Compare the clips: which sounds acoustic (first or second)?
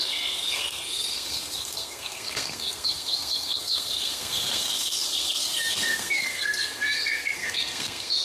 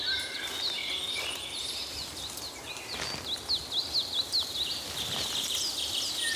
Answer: second